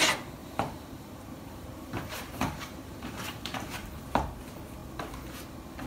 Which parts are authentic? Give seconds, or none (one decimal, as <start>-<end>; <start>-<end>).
0.0-0.4; 3.9-5.9